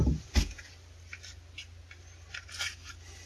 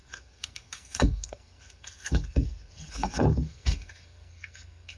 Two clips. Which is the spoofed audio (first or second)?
second